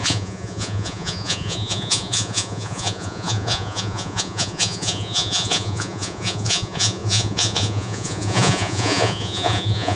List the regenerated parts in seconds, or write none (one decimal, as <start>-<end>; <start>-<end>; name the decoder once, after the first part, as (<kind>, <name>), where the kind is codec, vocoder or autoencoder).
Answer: 0.0-10.0 (vocoder, Vocos)